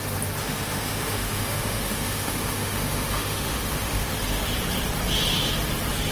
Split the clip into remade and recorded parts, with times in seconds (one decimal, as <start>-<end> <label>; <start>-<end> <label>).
0.0-0.4 recorded; 0.4-4.1 remade; 4.1-6.1 recorded